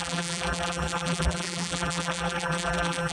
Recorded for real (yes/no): no